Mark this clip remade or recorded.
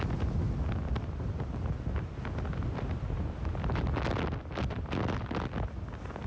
recorded